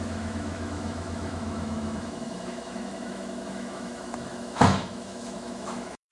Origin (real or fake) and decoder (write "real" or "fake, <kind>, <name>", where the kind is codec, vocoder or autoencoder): fake, autoencoder, DAC-VAE